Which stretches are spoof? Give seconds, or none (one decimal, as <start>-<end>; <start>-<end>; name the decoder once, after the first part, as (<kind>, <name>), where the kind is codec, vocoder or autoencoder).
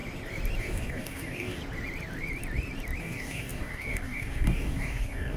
0.6-1.6 (codec, DAC); 3.0-5.4